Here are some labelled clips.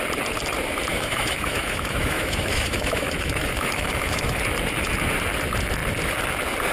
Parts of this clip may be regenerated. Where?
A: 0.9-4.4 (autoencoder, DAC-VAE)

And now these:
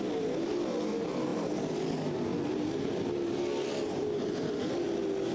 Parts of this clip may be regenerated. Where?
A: none

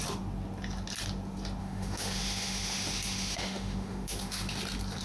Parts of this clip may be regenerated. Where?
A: 1.6-4.6 (autoencoder, DAC-VAE)

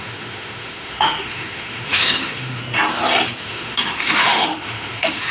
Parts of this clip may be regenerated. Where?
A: 0.0-2.6 (autoencoder, DAC-VAE); 3.4-5.3

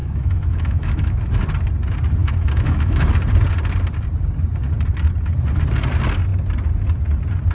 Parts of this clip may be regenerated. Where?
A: 0.0-1.3 (autoencoder, DAC-VAE); 2.2-3.1